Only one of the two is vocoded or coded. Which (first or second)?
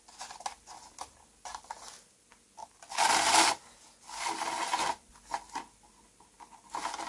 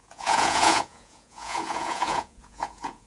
second